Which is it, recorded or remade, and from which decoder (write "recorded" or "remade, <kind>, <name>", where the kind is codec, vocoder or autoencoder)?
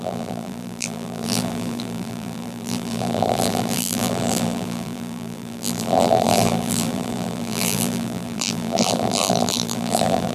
remade, vocoder, BigVGAN v2